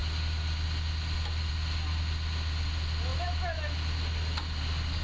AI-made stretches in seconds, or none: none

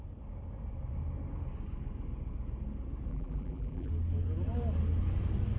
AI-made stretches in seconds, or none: 3.1-3.9 (vocoder, BigVGAN v2)

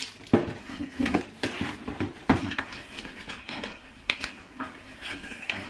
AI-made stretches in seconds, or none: 0.6-1.2 (codec, SNAC); 2.4-5.7

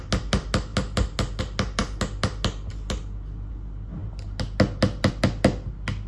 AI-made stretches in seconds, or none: none

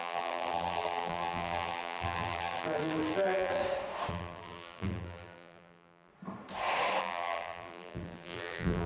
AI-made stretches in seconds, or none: 0.0-3.6 (vocoder, BigVGAN v2); 4.1-6.1; 7.0-8.9

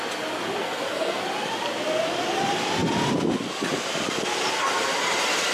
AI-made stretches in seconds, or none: 0.6-1.2 (codec, SNAC)

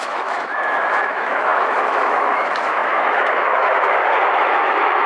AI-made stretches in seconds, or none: 0.0-5.1 (autoencoder, DAC-VAE)

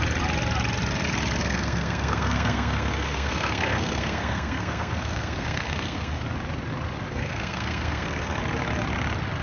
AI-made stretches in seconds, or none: 1.4-6.2 (codec, SNAC); 7.1-8.4